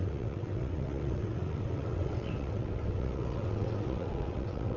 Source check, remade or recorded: remade